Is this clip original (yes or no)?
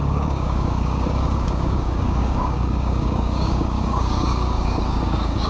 no